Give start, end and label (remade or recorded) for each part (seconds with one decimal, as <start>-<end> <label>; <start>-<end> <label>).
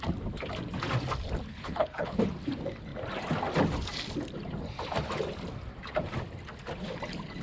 0.0-1.5 recorded; 1.5-2.2 remade; 2.2-7.4 recorded